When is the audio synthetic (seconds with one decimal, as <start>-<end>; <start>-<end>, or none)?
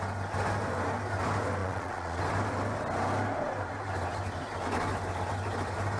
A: 1.6-2.2